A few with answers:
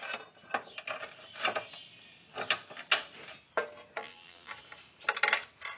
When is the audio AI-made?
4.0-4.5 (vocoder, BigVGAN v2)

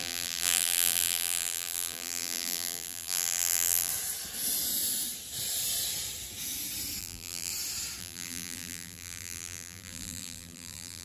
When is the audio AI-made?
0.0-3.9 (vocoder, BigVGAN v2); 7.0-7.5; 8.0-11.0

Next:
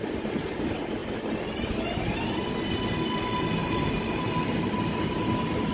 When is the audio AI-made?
0.0-0.6 (vocoder, BigVGAN v2); 3.6-4.2

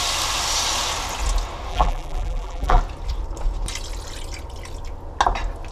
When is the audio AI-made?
1.7-2.8 (vocoder, BigVGAN v2)

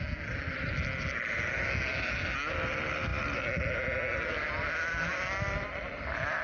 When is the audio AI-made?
none

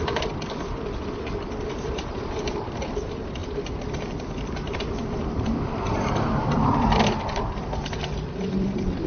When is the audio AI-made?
0.0-3.4 (vocoder, BigVGAN v2); 4.8-9.1